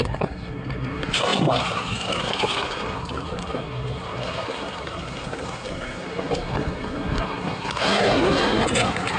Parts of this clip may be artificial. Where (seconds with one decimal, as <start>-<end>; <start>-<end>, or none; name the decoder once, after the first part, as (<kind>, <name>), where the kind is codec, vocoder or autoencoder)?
0.0-9.2 (codec, SNAC)